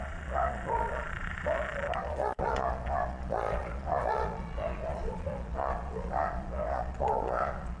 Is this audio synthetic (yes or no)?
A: yes